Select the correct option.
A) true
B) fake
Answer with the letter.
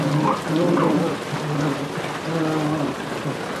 A